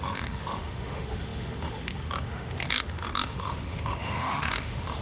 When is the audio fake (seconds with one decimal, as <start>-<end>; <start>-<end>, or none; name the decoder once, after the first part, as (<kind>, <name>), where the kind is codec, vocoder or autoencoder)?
0.0-5.0 (autoencoder, DAC-VAE)